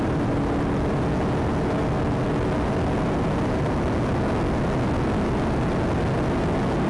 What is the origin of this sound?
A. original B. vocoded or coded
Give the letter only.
A